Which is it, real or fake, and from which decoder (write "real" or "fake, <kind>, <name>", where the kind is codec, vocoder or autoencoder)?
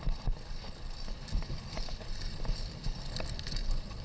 real